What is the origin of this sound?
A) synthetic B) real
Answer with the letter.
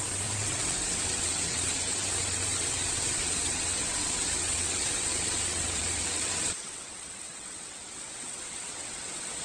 A